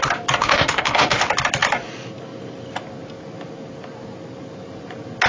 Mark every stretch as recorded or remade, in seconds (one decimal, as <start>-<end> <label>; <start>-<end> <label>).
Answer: 0.0-0.4 recorded; 0.4-1.2 remade; 1.2-5.3 recorded